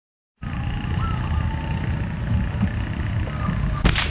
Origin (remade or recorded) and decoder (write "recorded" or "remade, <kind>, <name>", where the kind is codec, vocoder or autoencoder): recorded